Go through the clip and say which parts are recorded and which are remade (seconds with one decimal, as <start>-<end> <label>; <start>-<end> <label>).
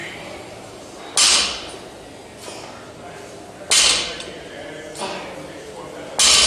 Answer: 0.0-0.8 remade; 0.8-6.5 recorded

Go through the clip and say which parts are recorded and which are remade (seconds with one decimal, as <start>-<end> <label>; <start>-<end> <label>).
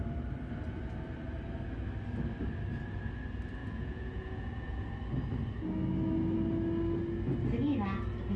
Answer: 0.0-3.6 recorded; 3.6-4.9 remade; 4.9-8.4 recorded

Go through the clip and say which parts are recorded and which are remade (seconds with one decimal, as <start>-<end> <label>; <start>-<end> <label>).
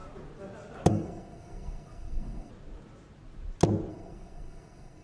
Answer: 0.0-0.9 recorded; 0.9-2.5 remade; 2.5-3.9 recorded; 3.9-5.0 remade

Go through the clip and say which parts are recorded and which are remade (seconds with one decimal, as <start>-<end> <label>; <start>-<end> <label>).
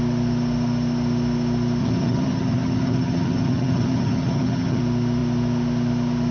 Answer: 0.0-1.8 recorded; 1.8-4.8 remade; 4.8-6.3 recorded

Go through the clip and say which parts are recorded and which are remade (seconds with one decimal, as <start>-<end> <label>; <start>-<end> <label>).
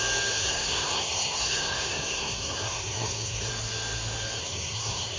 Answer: 0.0-0.4 recorded; 0.4-3.5 remade; 3.5-4.4 recorded; 4.4-5.2 remade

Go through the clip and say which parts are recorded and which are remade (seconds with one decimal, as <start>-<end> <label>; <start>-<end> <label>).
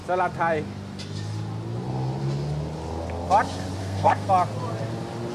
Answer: 0.0-3.8 recorded; 3.8-4.3 remade; 4.3-5.3 recorded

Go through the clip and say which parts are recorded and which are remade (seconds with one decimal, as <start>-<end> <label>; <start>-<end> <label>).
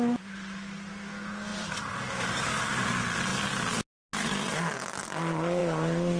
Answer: 0.0-1.5 recorded; 1.5-2.0 remade; 2.0-6.2 recorded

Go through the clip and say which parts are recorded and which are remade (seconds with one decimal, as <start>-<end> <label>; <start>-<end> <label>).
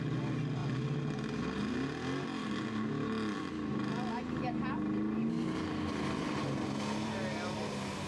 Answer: 0.0-8.1 recorded